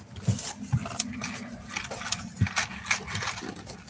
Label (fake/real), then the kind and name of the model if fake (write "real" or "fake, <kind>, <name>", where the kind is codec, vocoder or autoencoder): real